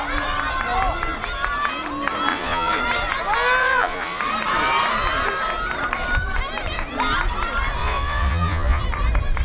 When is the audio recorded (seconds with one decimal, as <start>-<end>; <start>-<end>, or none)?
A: 0.0-2.3; 2.8-3.6; 4.2-7.8; 8.8-9.4

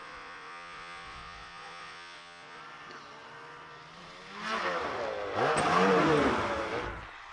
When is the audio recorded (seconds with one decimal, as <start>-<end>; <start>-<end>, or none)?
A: 2.6-7.3

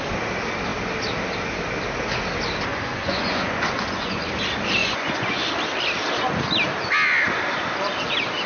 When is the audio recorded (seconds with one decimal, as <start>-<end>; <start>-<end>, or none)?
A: 0.0-2.7; 4.3-4.8; 5.5-8.5

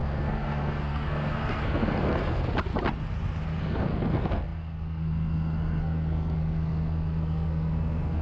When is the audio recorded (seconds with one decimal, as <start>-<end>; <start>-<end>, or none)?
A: 2.4-3.6